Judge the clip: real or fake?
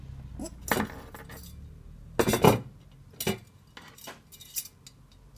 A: real